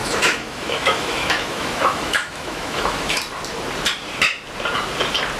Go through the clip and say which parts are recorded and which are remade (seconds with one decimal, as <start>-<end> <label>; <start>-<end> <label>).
0.0-3.2 remade; 3.2-5.4 recorded